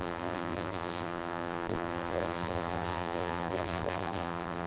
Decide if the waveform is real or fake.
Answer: fake